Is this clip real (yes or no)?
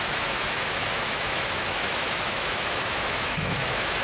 no